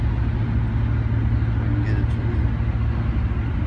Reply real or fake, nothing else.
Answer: real